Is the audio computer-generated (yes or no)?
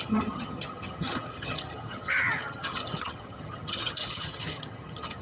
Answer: yes